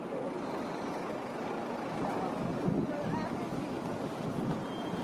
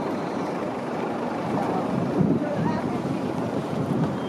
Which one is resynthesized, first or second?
second